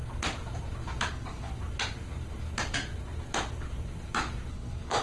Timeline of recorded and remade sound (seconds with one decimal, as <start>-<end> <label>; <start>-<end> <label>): 0.0-1.1 recorded; 1.1-1.5 remade; 1.5-4.5 recorded; 4.5-5.0 remade